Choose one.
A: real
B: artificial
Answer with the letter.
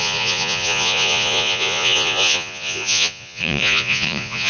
B